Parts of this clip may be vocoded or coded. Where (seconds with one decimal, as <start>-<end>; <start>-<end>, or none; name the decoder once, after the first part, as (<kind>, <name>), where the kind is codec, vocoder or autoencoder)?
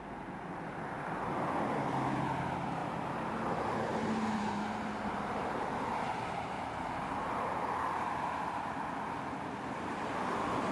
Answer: 2.8-3.5 (vocoder, BigVGAN v2); 3.9-5.4; 7.0-7.5